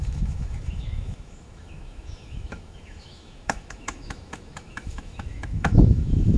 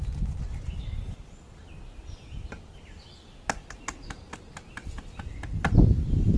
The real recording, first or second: second